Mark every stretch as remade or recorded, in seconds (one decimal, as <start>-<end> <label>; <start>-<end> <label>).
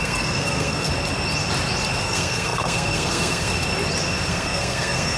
0.0-0.9 remade; 0.9-2.0 recorded; 2.0-3.5 remade; 3.5-4.3 recorded; 4.3-5.2 remade